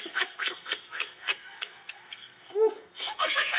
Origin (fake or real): fake